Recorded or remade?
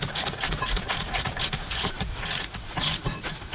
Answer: remade